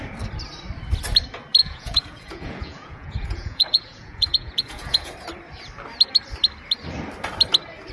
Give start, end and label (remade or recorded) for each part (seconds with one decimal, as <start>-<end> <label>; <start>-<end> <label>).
0.0-1.6 recorded; 1.6-5.1 remade; 5.1-7.9 recorded